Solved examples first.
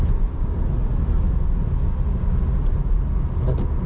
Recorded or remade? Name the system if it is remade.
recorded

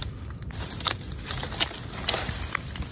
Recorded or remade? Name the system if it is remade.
recorded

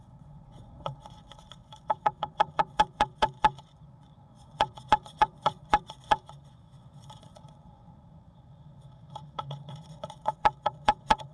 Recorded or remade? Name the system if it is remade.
remade, vocoder, Vocos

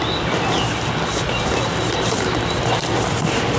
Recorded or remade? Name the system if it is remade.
recorded